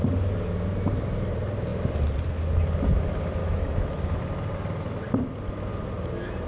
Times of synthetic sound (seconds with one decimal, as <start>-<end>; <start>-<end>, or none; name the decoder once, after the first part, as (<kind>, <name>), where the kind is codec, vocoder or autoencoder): 3.4-4.2 (autoencoder, DAC-VAE)